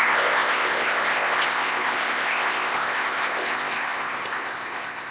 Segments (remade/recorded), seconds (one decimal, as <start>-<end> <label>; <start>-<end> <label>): 0.0-5.1 remade